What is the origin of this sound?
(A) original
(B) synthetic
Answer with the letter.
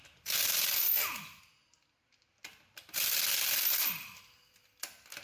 B